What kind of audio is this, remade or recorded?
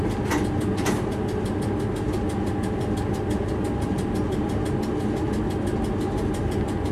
recorded